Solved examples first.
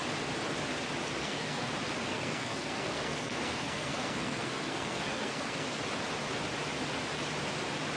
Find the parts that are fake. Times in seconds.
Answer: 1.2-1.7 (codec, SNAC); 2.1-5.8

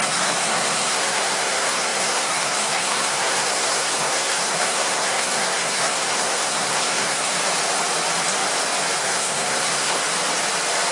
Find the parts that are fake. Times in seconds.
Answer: 0.0-7.3 (codec, SNAC); 9.0-10.0

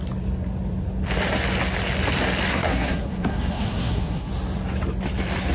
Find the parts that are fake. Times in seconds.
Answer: 2.5-4.3 (codec, SNAC)

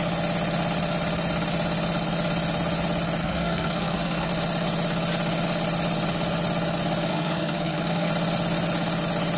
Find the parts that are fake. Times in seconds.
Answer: 3.2-4.3 (codec, SNAC); 7.1-8.1

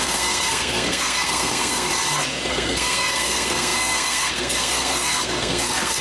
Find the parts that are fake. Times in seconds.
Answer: 0.0-1.9 (codec, SNAC); 2.5-6.0

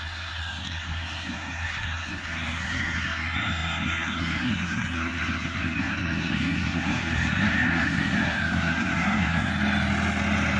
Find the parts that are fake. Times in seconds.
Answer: 0.0-9.5 (codec, SNAC)